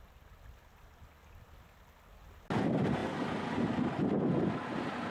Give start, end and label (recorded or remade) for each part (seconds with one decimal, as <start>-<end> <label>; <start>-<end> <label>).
0.0-5.1 recorded